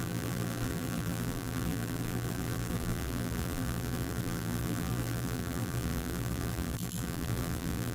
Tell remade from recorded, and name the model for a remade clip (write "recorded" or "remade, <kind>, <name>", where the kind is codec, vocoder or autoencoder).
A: remade, vocoder, BigVGAN v2